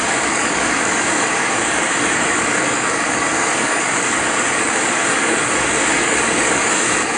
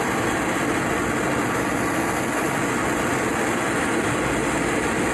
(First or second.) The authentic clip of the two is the second